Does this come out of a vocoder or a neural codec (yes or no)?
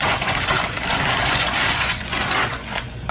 yes